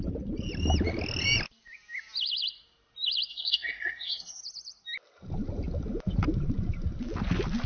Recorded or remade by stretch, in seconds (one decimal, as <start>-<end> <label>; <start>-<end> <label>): 0.0-3.3 recorded; 3.3-4.4 remade; 4.4-7.7 recorded